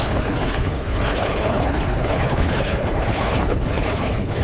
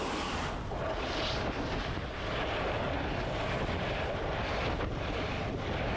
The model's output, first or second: first